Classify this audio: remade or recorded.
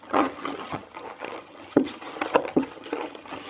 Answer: remade